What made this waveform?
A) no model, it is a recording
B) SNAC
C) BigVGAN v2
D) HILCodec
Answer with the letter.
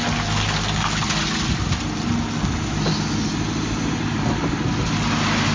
A